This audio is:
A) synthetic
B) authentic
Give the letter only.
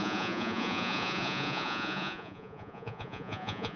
A